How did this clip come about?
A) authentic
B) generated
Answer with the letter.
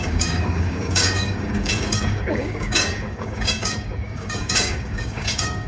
B